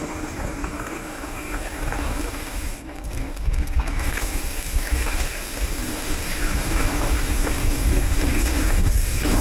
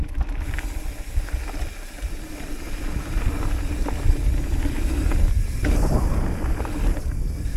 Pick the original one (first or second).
second